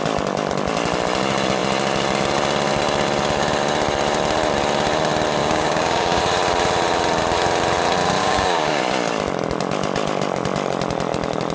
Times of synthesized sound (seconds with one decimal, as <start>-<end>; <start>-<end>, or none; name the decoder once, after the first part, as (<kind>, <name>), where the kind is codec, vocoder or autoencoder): 5.4-6.2 (codec, DAC); 8.2-8.8